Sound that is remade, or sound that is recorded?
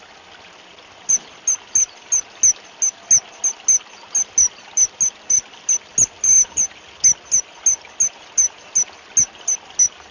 recorded